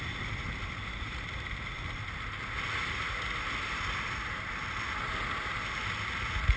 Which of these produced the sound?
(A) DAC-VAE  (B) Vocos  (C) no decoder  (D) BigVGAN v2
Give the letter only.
C